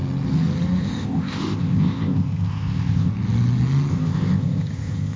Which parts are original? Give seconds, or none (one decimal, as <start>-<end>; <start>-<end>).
0.0-0.8; 3.1-3.9